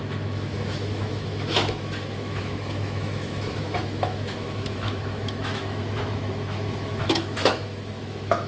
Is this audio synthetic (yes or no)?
yes